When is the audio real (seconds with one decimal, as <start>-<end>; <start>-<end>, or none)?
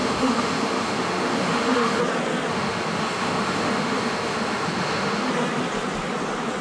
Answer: 2.0-2.5; 5.3-6.6